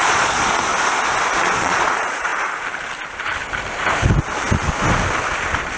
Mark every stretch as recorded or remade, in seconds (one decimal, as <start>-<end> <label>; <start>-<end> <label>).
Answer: 0.0-0.7 remade; 0.7-1.3 recorded; 1.3-2.3 remade; 2.3-5.8 recorded